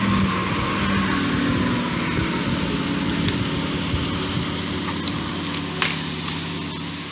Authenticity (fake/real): real